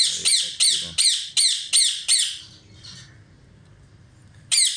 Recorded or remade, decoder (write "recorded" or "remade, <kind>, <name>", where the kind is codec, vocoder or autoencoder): recorded